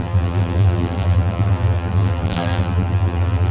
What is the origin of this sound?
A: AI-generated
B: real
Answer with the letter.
A